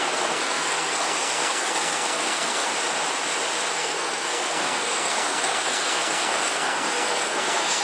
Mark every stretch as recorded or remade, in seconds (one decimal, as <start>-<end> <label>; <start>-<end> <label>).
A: 0.0-2.7 remade; 2.7-3.7 recorded; 3.7-7.8 remade